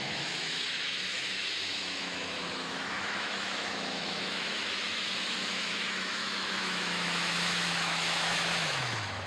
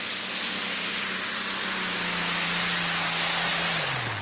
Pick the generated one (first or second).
first